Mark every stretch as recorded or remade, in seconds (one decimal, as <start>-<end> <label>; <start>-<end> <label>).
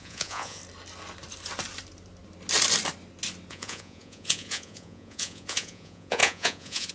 0.0-0.6 remade; 0.6-3.5 recorded; 3.5-6.9 remade